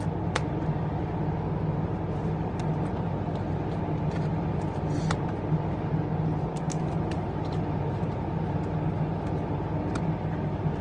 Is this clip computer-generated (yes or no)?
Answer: no